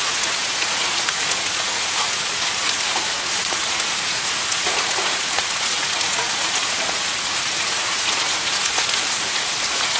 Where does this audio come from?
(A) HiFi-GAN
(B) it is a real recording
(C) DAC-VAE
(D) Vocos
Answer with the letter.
D